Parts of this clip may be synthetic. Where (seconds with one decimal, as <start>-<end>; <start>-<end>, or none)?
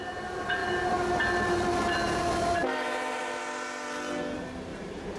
2.6-3.2; 4.7-5.2